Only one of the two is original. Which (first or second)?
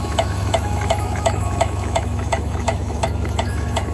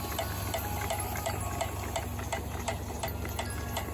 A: second